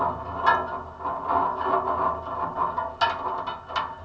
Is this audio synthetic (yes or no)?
no